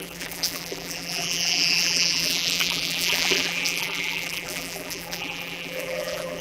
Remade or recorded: remade